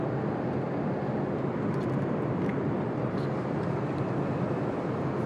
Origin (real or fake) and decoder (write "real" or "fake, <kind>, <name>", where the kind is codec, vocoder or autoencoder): real